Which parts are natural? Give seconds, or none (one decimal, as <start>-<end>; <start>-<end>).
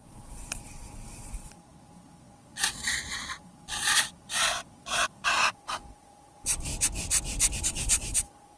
6.7-7.6